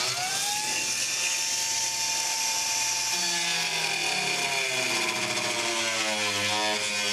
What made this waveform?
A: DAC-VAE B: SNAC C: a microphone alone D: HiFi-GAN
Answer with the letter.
C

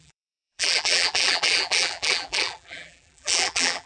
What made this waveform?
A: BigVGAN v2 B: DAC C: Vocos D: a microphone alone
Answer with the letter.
A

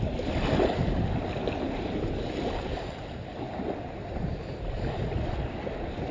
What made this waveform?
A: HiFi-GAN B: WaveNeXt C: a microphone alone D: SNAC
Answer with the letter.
C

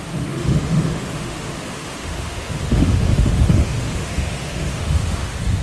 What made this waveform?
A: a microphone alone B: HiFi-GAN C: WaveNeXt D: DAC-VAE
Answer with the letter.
D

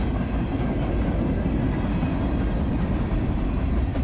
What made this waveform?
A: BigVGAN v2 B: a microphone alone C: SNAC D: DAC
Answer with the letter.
B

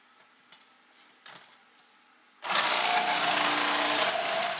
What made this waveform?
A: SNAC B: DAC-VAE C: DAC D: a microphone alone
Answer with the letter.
D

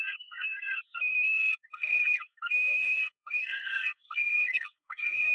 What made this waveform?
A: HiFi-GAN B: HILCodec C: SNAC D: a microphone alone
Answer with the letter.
C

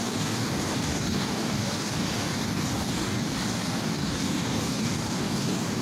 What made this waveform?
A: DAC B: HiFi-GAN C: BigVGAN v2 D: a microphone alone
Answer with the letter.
A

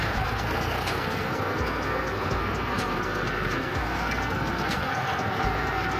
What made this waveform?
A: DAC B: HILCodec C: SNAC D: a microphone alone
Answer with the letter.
C